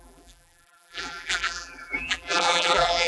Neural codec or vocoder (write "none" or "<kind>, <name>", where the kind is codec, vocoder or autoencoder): vocoder, BigVGAN v2